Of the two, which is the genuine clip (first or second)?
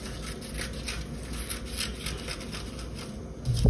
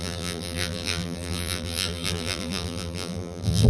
first